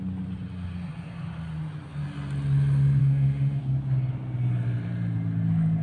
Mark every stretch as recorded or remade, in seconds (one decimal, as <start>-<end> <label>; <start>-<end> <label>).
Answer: 0.0-3.0 recorded; 3.0-3.6 remade; 3.6-5.8 recorded